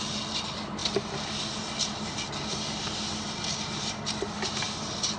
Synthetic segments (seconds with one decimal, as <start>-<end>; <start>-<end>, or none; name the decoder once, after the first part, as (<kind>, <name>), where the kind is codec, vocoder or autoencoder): none